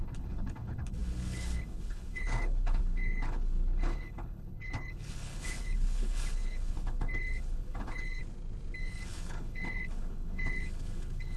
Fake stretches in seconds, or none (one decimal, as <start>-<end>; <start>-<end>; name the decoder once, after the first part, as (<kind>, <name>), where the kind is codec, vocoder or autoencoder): 0.0-8.2 (codec, HILCodec); 8.8-11.4